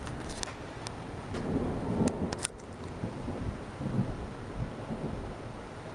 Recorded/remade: recorded